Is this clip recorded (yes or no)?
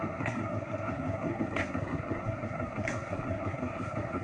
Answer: no